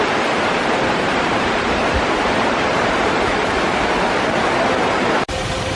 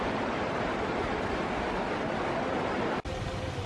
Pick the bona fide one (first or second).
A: second